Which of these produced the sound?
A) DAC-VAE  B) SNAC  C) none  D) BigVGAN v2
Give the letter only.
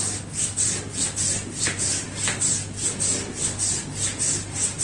C